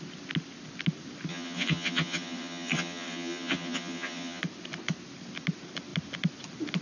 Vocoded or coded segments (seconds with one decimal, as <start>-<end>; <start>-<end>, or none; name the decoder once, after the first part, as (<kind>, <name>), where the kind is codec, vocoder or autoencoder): 1.3-4.4 (vocoder, HiFi-GAN)